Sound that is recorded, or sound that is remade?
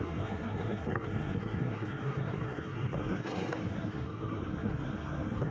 remade